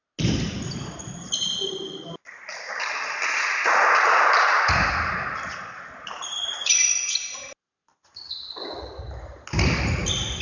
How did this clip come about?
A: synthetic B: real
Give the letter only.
B